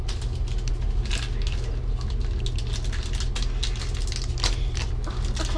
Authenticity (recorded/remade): recorded